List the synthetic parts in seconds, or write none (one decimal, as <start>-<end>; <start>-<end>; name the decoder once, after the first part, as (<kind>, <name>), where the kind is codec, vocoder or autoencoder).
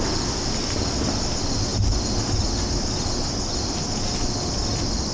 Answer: none